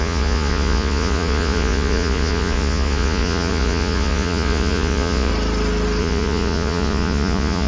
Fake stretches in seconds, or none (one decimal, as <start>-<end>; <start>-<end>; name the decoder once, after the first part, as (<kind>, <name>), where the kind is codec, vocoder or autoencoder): 0.0-5.3 (vocoder, Vocos); 6.0-7.7

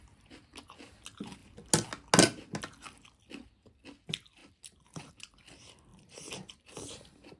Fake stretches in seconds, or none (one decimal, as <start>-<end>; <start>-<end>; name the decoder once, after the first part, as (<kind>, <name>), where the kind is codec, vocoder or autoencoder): 4.4-5.1 (vocoder, BigVGAN v2); 5.9-7.4